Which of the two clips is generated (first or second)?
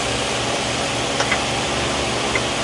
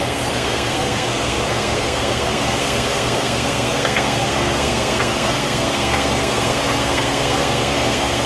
second